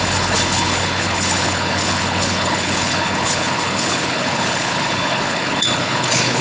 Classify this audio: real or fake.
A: fake